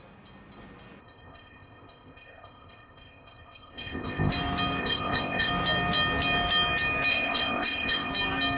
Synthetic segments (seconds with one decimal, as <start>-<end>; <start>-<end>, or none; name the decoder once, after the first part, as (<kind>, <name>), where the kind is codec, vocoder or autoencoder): 1.0-4.3 (codec, ZipCodec); 4.8-5.5; 7.1-8.1